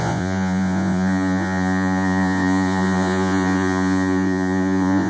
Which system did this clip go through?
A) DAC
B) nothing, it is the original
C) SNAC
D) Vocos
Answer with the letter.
D